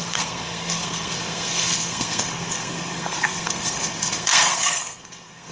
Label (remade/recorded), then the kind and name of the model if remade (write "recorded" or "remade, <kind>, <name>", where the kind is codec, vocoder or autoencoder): remade, codec, SNAC